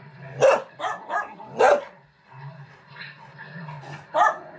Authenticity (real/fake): real